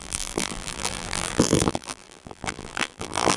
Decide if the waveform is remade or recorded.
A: remade